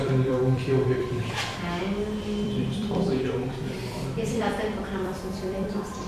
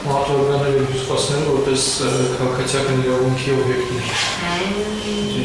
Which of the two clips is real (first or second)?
second